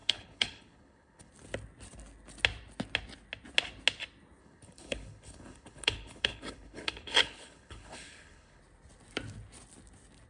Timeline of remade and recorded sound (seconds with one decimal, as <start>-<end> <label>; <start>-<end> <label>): 0.0-1.3 remade; 1.3-4.4 recorded; 4.4-8.6 remade; 8.6-10.3 recorded